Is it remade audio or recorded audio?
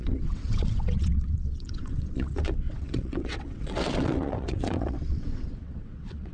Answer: remade